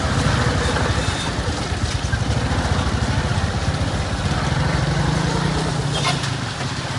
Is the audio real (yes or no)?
yes